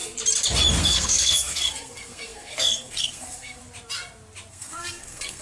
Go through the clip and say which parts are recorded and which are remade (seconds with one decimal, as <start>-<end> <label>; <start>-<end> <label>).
0.0-0.8 recorded; 0.8-3.6 remade; 3.6-4.5 recorded; 4.5-5.4 remade